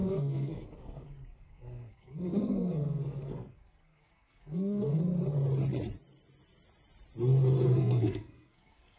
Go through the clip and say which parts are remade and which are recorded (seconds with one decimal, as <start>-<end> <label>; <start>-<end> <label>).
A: 0.0-5.0 remade; 5.0-7.8 recorded; 7.8-9.0 remade